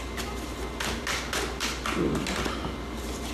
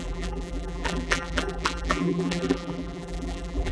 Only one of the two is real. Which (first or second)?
first